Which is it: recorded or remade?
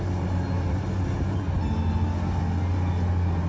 recorded